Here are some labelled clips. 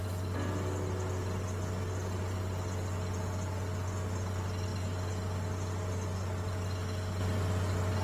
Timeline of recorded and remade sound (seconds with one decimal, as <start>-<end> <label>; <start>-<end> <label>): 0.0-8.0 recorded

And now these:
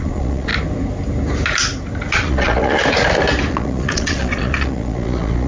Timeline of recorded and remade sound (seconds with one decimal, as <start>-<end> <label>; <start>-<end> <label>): 0.0-0.5 remade; 0.5-2.1 recorded; 2.1-2.8 remade; 2.8-3.5 recorded; 3.5-5.5 remade

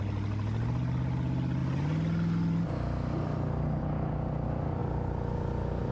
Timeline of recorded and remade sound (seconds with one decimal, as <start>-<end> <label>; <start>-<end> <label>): 0.0-5.9 recorded

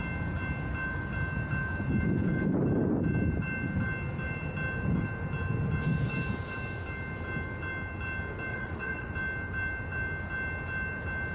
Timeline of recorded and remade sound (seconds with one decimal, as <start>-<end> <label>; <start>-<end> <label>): 0.0-8.5 recorded; 8.5-9.1 remade; 9.1-11.3 recorded

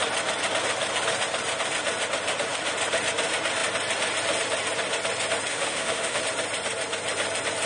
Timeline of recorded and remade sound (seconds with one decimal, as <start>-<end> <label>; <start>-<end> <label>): 0.0-5.5 recorded; 5.5-6.2 remade; 6.2-7.7 recorded